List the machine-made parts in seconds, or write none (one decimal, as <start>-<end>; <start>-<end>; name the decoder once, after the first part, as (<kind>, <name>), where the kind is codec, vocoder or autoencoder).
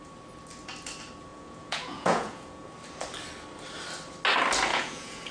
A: 1.3-2.7 (vocoder, Vocos); 4.7-5.3